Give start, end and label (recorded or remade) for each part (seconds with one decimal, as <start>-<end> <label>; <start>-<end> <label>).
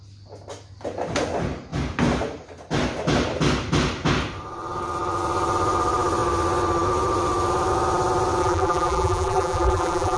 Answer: 0.0-8.4 recorded; 8.4-10.2 remade